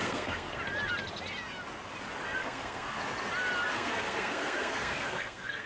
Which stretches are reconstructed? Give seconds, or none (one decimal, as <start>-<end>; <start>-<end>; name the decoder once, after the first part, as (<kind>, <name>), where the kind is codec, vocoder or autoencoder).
0.0-0.6 (codec, SNAC); 2.4-3.0; 3.7-5.7